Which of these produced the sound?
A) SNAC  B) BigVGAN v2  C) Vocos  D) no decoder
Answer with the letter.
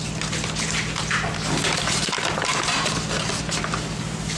D